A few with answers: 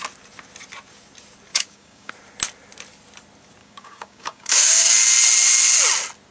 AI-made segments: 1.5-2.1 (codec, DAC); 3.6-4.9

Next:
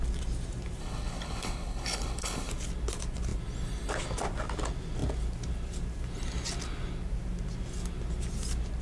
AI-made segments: 0.8-2.5 (codec, HILCodec)

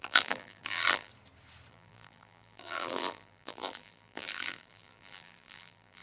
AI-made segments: 0.0-1.1 (vocoder, BigVGAN v2); 1.7-6.0